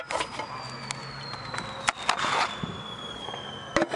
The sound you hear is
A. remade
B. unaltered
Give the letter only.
B